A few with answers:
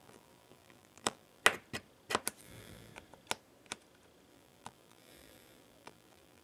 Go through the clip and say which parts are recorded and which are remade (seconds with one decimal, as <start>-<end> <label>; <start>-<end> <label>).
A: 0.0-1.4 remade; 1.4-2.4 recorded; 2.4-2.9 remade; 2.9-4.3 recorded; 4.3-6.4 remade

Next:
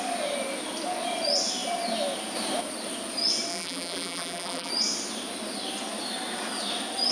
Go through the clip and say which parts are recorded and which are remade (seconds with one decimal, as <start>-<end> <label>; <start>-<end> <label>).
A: 0.0-3.5 recorded; 3.5-4.7 remade; 4.7-7.1 recorded

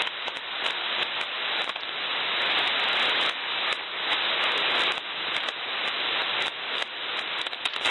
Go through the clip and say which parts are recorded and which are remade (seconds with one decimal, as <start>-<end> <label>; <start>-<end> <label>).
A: 0.0-7.9 recorded

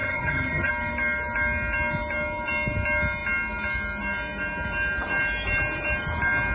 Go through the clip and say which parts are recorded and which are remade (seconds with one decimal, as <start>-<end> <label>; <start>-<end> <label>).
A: 0.0-0.7 remade; 0.7-6.5 recorded

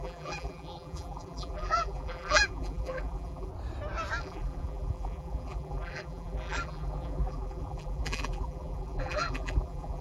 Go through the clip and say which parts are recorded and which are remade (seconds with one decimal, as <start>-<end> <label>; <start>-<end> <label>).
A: 0.0-3.5 remade; 3.5-4.2 recorded; 4.2-10.0 remade

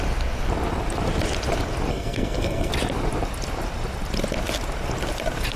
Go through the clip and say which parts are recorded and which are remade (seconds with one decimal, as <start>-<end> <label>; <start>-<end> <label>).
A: 0.0-1.9 recorded; 1.9-2.7 remade; 2.7-5.6 recorded